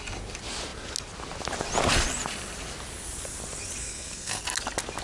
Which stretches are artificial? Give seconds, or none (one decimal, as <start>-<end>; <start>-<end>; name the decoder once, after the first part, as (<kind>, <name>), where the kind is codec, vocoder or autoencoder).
3.8-4.4 (codec, SNAC)

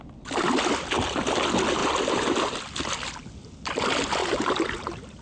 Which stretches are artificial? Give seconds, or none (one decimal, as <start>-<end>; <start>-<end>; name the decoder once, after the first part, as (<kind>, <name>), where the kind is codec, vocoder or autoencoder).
1.8-2.4 (vocoder, BigVGAN v2); 4.2-5.2

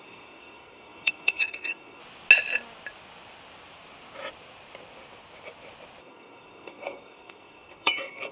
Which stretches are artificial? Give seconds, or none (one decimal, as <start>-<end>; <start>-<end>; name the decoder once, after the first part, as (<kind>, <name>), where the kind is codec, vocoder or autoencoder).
0.0-2.0 (codec, SNAC); 6.0-8.3

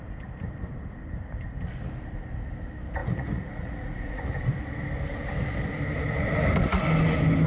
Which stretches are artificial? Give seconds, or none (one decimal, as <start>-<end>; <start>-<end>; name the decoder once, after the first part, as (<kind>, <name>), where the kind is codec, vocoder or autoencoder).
3.0-4.2 (vocoder, Vocos)

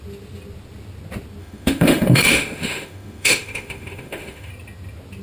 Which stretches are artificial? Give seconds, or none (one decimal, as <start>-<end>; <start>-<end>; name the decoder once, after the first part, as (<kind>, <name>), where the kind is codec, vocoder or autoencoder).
1.4-4.5 (autoencoder, DAC-VAE)

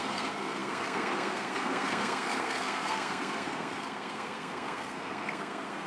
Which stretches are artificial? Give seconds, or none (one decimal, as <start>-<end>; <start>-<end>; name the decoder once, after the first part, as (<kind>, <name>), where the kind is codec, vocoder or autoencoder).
0.0-5.9 (codec, SNAC)

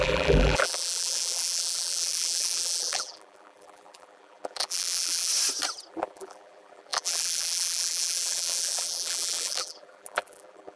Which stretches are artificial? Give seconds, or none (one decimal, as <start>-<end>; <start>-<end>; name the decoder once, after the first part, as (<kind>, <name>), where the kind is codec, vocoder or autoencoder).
0.0-5.3 (vocoder, BigVGAN v2); 5.9-10.8